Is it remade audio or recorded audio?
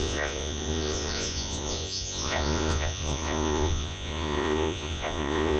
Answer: remade